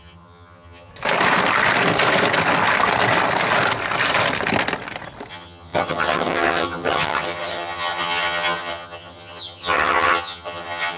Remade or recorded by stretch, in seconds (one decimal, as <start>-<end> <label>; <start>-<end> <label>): 0.0-0.9 remade; 0.9-5.3 recorded; 5.3-11.0 remade